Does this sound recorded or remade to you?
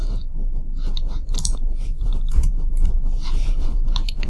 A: remade